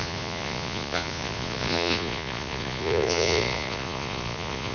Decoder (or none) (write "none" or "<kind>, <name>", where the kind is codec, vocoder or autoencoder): vocoder, Vocos